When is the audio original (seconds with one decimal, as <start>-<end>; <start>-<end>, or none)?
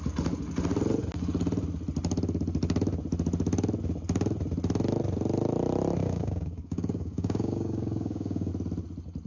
0.0-6.0; 8.5-9.3